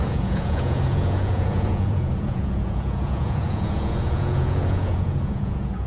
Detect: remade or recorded remade